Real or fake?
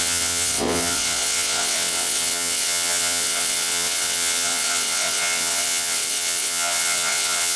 fake